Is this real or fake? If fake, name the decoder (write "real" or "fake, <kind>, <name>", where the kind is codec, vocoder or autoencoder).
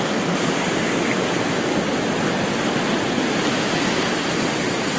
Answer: real